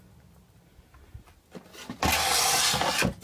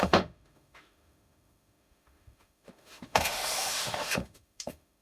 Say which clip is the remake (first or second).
second